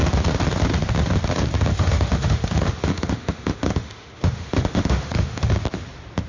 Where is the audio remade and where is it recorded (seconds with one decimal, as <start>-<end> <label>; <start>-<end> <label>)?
0.0-1.7 recorded; 1.7-5.5 remade; 5.5-6.3 recorded